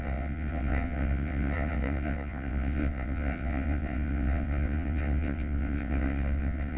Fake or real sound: fake